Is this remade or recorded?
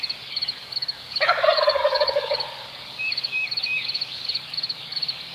remade